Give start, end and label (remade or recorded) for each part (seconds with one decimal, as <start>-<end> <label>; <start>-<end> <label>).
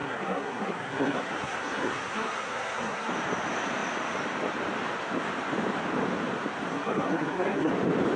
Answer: 0.0-3.1 remade; 3.1-6.7 recorded; 6.7-7.7 remade; 7.7-8.2 recorded